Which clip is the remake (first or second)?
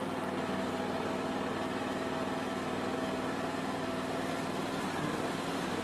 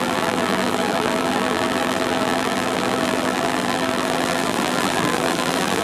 second